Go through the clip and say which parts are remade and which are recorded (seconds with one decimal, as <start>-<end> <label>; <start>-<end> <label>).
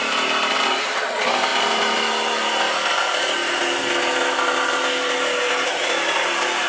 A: 0.0-6.7 recorded